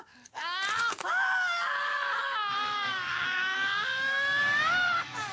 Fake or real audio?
fake